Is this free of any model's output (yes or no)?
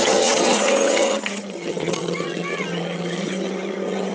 no